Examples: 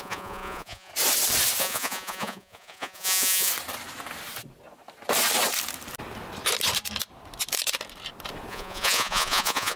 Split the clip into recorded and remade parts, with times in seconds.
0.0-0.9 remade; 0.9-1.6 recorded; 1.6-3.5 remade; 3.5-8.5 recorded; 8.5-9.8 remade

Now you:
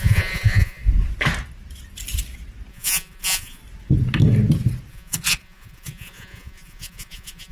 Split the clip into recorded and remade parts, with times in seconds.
0.0-0.8 remade; 0.8-2.7 recorded; 2.7-3.6 remade; 3.6-4.9 recorded; 4.9-7.5 remade

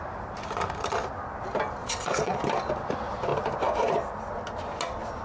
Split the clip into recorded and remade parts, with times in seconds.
0.0-1.8 recorded; 1.8-2.4 remade; 2.4-5.2 recorded

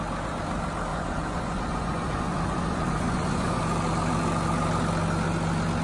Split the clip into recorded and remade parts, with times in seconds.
0.0-0.9 recorded; 0.9-3.6 remade; 3.6-5.8 recorded